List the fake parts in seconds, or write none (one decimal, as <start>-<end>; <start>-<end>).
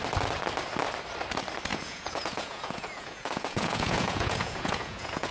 1.7-5.3